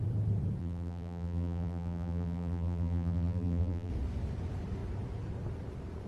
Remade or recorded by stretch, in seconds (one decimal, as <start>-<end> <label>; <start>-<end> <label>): 0.0-0.6 recorded; 0.6-3.9 remade; 3.9-6.1 recorded

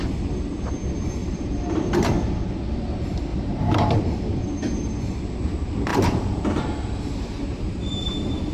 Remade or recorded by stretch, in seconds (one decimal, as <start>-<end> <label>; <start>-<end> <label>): 0.0-1.2 recorded; 1.2-1.9 remade; 1.9-3.3 recorded; 3.3-4.5 remade; 4.5-5.9 recorded; 5.9-8.5 remade

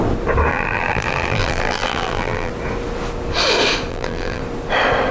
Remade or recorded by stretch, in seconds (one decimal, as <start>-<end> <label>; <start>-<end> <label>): 0.0-0.5 recorded; 0.5-2.5 remade; 2.5-3.9 recorded; 3.9-4.4 remade; 4.4-5.1 recorded

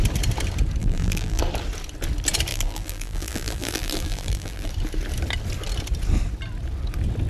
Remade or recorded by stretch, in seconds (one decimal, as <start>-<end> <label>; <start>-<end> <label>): 0.0-0.8 recorded; 0.8-1.4 remade; 1.4-2.5 recorded; 2.5-4.7 remade; 4.7-7.3 recorded

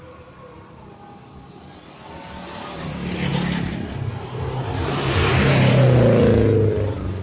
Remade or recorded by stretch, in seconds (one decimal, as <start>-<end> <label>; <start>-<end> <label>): 0.0-7.2 recorded

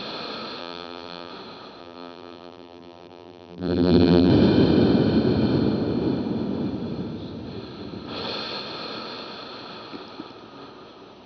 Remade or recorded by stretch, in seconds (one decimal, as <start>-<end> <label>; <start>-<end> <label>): 0.0-0.6 recorded; 0.6-1.3 remade; 1.3-1.8 recorded; 1.8-4.3 remade; 4.3-11.3 recorded

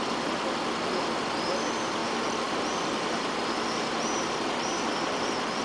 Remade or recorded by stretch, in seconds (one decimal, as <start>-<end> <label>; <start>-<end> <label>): 0.0-2.0 recorded; 2.0-5.6 remade